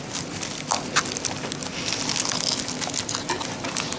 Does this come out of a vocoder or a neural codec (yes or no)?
no